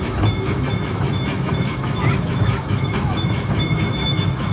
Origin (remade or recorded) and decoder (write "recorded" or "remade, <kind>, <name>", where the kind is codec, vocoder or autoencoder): remade, autoencoder, DAC-VAE